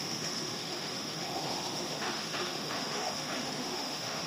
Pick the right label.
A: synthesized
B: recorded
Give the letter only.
A